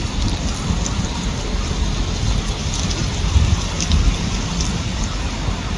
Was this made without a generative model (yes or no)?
yes